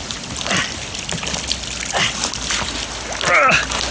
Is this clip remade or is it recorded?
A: recorded